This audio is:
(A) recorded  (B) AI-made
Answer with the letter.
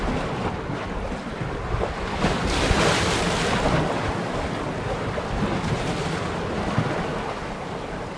A